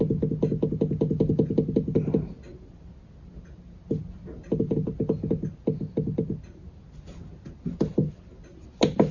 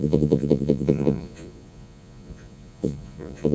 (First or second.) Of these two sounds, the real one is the first